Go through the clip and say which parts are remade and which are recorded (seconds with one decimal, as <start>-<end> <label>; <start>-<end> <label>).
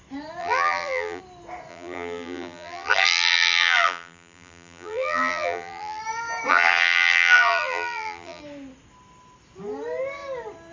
0.0-0.4 recorded; 0.4-1.2 remade; 1.2-1.7 recorded; 1.7-6.0 remade; 6.0-6.5 recorded; 6.5-8.4 remade; 8.4-10.7 recorded